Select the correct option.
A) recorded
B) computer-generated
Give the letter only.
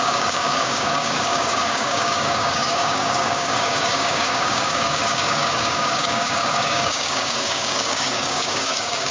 B